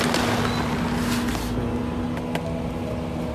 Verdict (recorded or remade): recorded